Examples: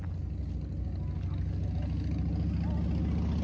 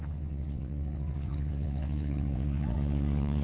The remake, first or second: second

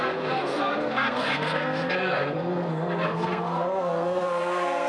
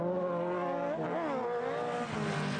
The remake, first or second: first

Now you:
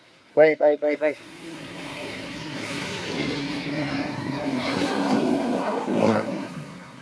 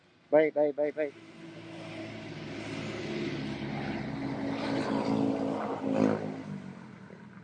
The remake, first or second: first